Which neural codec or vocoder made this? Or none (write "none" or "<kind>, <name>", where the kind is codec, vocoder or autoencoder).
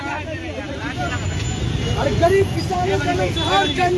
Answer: none